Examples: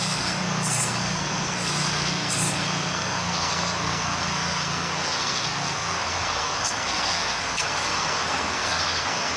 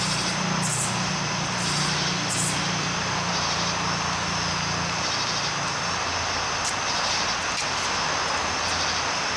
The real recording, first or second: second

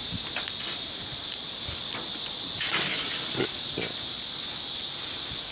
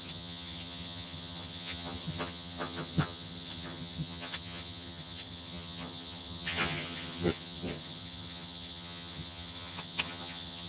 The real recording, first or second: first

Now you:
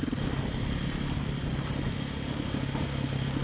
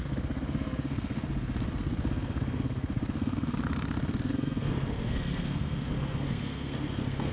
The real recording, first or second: first